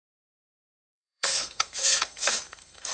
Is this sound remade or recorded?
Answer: remade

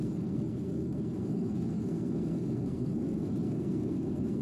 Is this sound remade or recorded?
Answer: remade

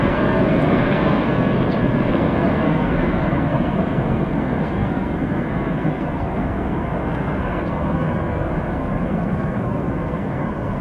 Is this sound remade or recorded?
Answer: remade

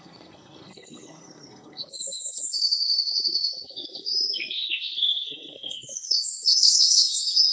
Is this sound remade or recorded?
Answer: remade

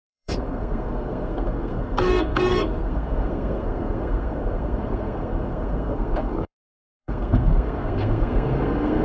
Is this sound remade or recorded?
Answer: remade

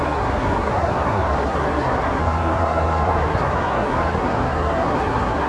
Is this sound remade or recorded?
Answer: remade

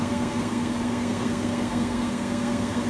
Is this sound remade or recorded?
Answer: remade